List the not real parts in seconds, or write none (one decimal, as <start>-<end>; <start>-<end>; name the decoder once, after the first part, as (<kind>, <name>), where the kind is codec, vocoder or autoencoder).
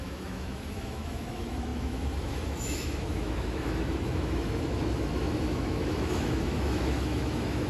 0.0-7.7 (autoencoder, DAC-VAE)